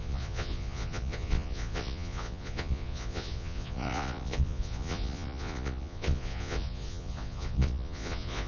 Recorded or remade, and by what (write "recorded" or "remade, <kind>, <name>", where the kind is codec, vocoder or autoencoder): remade, vocoder, Vocos